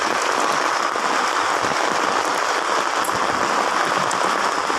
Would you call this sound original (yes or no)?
yes